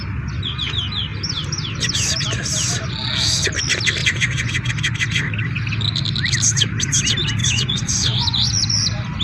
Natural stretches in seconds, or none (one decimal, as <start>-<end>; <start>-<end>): 0.0-4.0; 4.7-7.4; 8.5-9.2